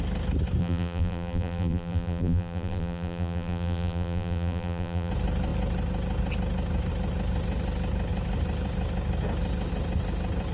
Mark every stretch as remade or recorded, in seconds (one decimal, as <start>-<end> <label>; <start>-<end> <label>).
0.0-0.6 recorded; 0.6-5.1 remade; 5.1-10.5 recorded